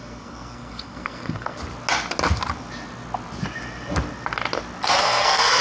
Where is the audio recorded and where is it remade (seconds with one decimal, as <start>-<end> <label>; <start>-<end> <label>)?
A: 0.0-1.6 remade; 1.6-5.0 recorded; 5.0-5.6 remade